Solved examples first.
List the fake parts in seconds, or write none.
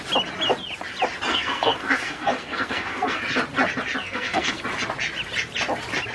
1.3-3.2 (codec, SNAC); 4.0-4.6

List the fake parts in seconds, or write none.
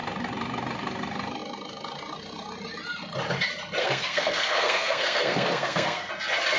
3.8-6.1 (codec, SNAC)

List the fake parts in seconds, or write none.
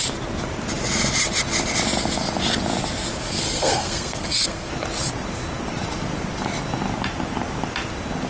3.3-4.7 (codec, SNAC)